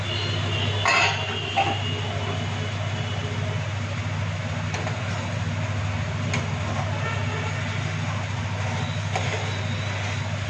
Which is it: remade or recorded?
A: recorded